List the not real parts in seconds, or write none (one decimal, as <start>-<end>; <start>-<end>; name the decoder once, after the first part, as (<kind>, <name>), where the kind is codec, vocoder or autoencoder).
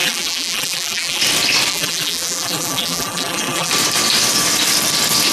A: 0.0-1.2 (vocoder, BigVGAN v2); 1.7-3.7